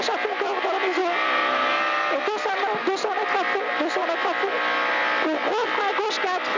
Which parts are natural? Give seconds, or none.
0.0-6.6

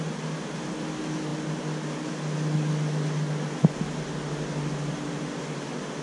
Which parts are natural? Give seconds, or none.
0.0-6.0

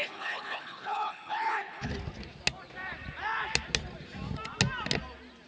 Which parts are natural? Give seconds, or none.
1.9-5.5

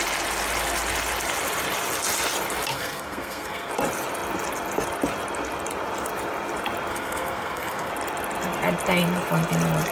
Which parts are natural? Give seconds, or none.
0.0-2.7; 3.7-6.9; 7.9-9.9

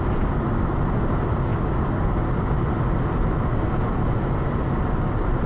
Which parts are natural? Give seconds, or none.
0.0-5.5

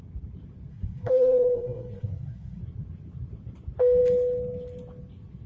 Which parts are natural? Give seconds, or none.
0.0-0.7; 2.6-5.5

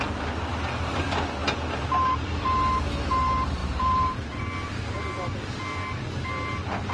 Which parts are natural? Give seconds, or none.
0.0-1.4; 2.3-3.6; 4.4-6.9

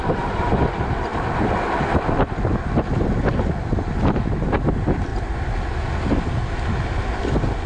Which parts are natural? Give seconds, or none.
0.0-7.7